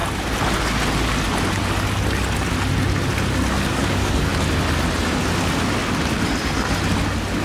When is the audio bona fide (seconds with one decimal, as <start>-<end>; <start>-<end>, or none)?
0.0-3.7; 4.3-7.4